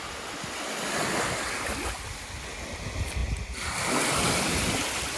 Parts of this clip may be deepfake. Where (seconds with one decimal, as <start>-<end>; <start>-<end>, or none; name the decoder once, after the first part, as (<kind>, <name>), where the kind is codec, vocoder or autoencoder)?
none

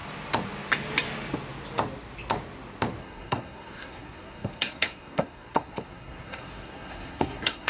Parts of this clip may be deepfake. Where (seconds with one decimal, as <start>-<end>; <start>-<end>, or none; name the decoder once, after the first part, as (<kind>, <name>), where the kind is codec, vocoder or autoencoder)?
3.0-7.7 (codec, SNAC)

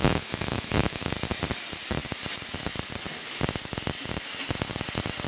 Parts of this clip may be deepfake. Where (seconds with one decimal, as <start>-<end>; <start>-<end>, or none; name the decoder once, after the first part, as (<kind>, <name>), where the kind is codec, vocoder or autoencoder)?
0.0-1.1 (autoencoder, DAC-VAE)

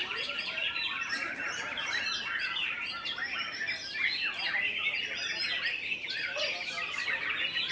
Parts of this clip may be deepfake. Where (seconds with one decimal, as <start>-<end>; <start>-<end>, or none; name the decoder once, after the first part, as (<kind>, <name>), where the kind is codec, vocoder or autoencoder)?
0.0-2.0 (vocoder, BigVGAN v2); 2.6-3.9; 6.0-6.7

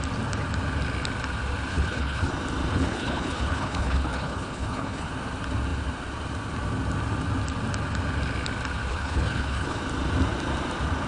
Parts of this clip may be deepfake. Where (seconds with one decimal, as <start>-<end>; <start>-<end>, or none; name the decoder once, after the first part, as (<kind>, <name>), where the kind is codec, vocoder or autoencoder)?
1.7-2.3 (codec, HILCodec); 2.7-5.1; 8.9-9.8

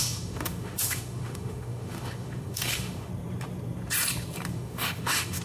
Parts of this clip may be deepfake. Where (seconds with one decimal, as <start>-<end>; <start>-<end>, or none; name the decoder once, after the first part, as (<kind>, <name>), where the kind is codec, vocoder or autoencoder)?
0.0-3.1 (autoencoder, DAC-VAE); 4.5-5.4

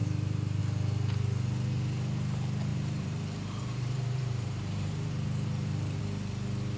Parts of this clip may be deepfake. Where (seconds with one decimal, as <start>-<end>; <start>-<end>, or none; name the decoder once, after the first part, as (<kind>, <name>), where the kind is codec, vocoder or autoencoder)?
0.0-0.6 (vocoder, BigVGAN v2); 2.7-6.0

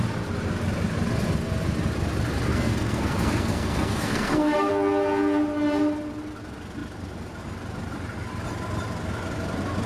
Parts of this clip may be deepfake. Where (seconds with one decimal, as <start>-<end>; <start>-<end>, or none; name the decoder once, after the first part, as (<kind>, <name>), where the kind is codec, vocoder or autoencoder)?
2.5-4.7 (codec, SNAC)